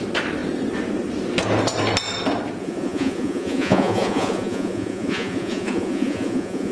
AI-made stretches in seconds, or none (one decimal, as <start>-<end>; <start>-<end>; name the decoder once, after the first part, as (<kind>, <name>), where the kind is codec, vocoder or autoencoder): 2.6-6.7 (vocoder, Vocos)